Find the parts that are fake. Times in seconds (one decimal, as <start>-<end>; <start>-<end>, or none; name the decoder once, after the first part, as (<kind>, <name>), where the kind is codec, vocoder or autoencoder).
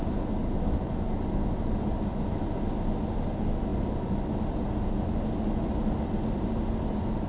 none